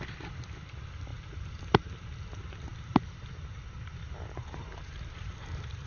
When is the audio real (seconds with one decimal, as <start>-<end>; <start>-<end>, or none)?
0.0-1.1; 1.6-2.7